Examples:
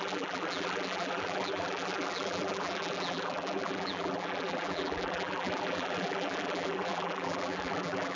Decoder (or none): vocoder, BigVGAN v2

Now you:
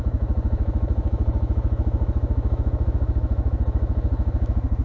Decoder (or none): autoencoder, DAC-VAE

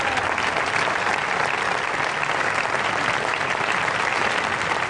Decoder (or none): none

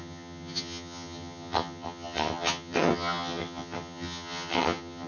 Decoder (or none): vocoder, HiFi-GAN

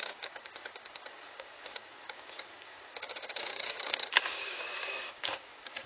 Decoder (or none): codec, DAC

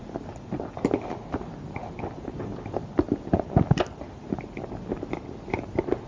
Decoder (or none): none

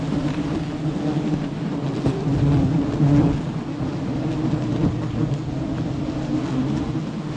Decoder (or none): none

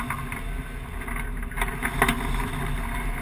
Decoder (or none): none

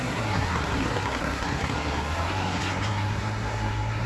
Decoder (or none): codec, SNAC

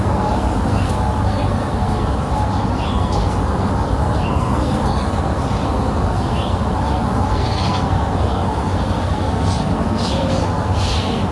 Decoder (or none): codec, SNAC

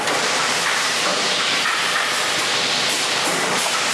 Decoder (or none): vocoder, BigVGAN v2